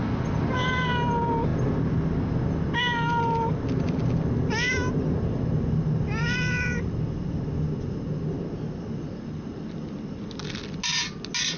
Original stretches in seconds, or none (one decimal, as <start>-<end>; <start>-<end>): 0.0-11.6